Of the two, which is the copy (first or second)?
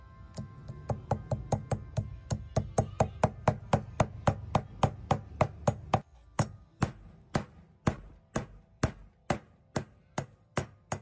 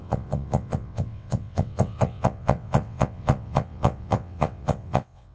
second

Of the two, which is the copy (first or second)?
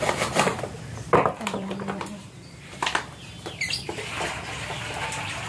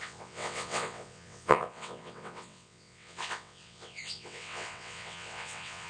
second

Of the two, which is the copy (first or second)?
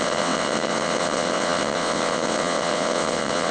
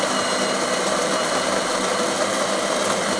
first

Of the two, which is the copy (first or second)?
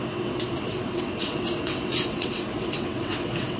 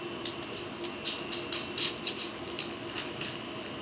first